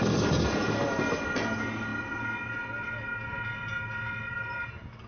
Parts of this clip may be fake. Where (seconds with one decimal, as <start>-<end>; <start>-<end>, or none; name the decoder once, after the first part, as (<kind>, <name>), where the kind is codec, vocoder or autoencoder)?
none